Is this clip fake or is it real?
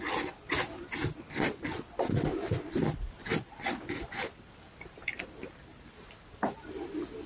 real